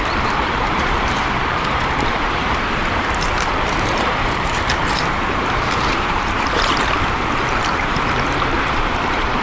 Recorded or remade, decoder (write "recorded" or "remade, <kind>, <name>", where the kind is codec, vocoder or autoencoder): remade, vocoder, BigVGAN v2